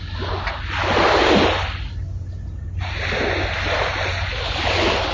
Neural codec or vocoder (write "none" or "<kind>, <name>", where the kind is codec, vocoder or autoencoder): none